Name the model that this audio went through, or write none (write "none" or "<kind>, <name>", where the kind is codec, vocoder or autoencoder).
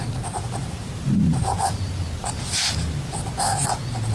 vocoder, BigVGAN v2